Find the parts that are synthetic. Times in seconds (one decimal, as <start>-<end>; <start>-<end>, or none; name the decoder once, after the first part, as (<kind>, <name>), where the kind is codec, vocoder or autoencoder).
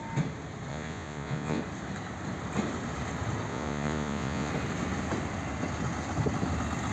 0.7-1.6 (vocoder, Vocos); 3.5-4.5